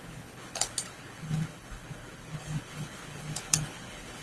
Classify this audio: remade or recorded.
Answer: remade